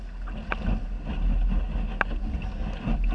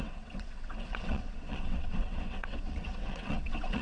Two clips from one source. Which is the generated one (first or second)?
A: second